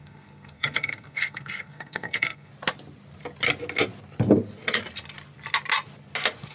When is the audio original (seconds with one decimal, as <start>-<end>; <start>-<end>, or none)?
2.5-6.5